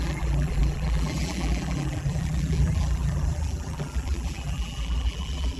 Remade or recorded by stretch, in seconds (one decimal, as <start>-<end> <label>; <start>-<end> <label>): 0.0-5.6 remade

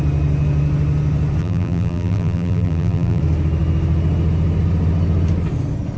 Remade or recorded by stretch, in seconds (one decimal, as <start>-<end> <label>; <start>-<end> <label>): 0.0-1.4 recorded; 1.4-3.2 remade; 3.2-6.0 recorded

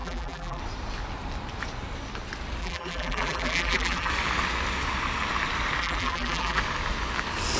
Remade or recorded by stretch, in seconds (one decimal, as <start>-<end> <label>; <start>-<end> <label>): 0.0-0.6 remade; 0.6-2.6 recorded; 2.6-4.1 remade; 4.1-5.8 recorded; 5.8-6.6 remade; 6.6-7.6 recorded

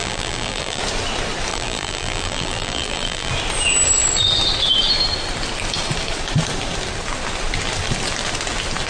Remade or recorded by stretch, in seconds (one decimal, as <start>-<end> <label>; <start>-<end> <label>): 0.0-0.8 remade; 0.8-1.5 recorded; 1.5-3.3 remade; 3.3-8.9 recorded

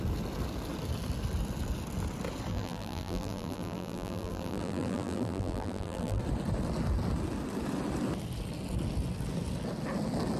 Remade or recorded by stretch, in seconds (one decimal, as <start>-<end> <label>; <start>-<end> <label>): 0.0-2.5 recorded; 2.5-6.2 remade; 6.2-10.4 recorded

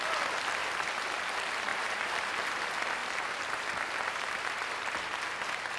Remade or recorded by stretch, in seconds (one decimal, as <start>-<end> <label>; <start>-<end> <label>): 0.0-0.6 recorded; 0.6-1.2 remade; 1.2-1.7 recorded; 1.7-2.6 remade; 2.6-3.0 recorded; 3.0-5.8 remade